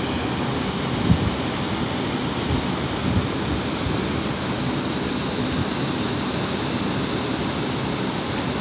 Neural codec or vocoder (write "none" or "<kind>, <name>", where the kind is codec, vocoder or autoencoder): none